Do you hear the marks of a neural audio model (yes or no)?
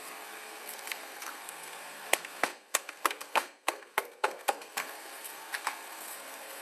yes